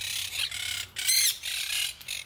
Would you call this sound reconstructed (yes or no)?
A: no